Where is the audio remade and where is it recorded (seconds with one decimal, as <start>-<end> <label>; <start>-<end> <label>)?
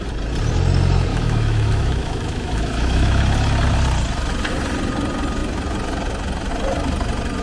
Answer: 0.0-1.1 recorded; 1.1-3.2 remade; 3.2-7.4 recorded